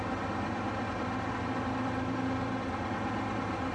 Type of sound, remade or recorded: recorded